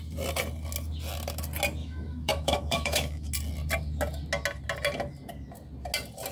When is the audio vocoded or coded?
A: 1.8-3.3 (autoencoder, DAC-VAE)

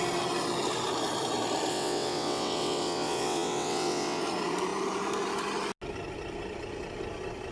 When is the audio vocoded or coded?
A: 1.7-4.2 (vocoder, WaveNeXt)